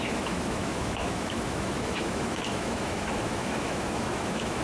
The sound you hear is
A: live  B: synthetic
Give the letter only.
B